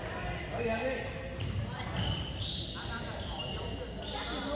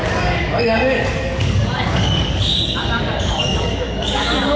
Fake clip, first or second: second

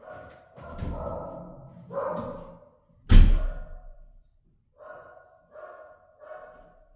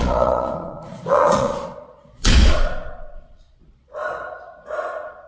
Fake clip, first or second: second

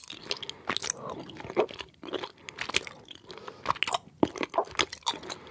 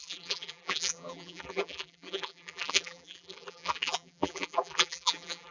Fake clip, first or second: second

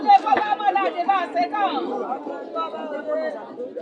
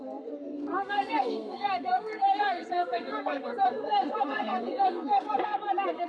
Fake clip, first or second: second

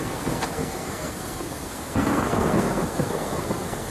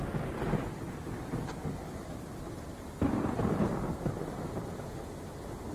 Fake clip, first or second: first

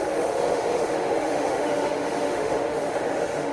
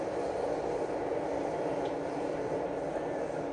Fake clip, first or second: first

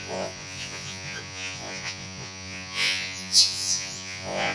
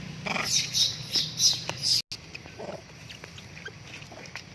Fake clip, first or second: first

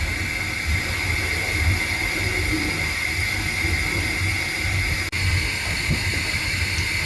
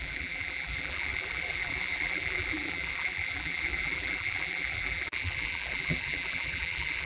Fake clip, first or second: second